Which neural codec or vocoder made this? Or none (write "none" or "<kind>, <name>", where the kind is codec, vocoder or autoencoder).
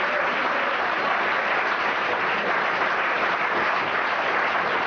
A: none